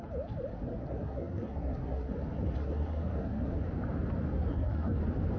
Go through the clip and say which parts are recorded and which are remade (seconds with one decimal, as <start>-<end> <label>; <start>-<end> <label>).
0.0-0.5 recorded; 0.5-2.1 remade; 2.1-2.6 recorded; 2.6-3.6 remade; 3.6-4.5 recorded; 4.5-5.0 remade; 5.0-5.4 recorded